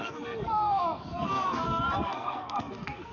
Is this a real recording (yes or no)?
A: no